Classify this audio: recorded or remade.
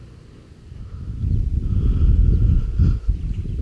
recorded